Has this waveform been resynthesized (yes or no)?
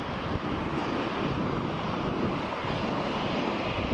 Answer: no